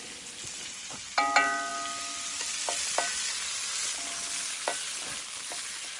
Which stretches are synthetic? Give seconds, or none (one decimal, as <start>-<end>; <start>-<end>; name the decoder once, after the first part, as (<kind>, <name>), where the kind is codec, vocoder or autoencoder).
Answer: none